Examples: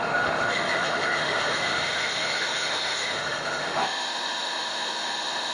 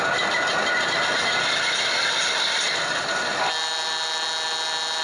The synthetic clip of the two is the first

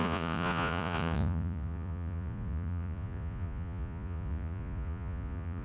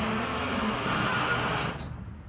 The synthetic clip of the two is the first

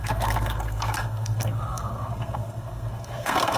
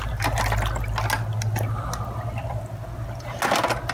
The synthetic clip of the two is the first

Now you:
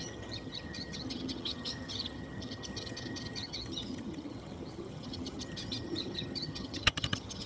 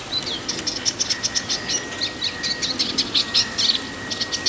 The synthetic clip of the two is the first